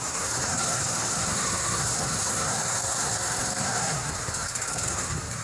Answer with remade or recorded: remade